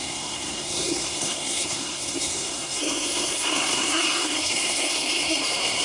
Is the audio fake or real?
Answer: fake